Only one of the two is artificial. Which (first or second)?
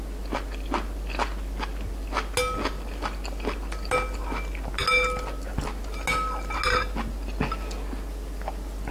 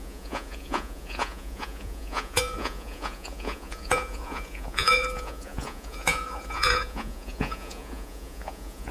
second